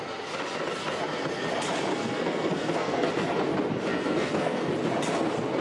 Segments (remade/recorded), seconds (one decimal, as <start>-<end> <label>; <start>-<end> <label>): 0.0-1.9 recorded; 1.9-3.1 remade; 3.1-3.9 recorded; 3.9-4.7 remade; 4.7-5.6 recorded